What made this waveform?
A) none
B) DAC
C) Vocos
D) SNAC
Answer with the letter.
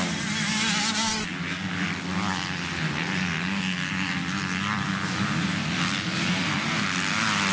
A